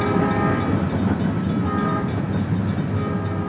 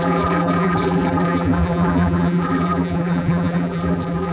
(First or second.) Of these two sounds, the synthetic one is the second